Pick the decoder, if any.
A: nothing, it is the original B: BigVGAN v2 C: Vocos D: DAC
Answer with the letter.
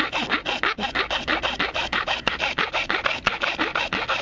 A